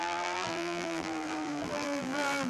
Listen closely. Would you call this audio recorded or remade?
remade